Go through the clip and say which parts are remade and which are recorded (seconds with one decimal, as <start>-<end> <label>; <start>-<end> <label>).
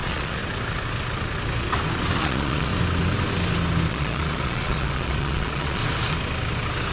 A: 0.0-0.4 remade; 0.4-2.2 recorded; 2.2-2.7 remade; 2.7-3.9 recorded; 3.9-5.8 remade; 5.8-6.9 recorded